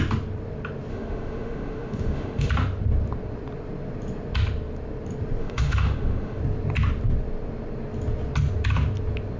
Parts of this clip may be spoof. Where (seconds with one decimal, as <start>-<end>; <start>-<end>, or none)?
0.9-2.5; 5.4-6.4